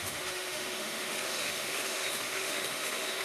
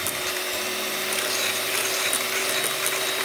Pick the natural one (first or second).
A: second